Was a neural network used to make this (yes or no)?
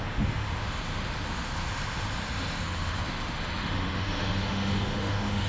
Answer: yes